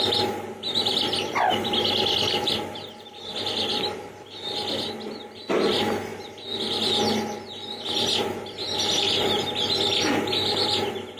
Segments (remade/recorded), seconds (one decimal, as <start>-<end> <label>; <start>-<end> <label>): 0.0-11.2 recorded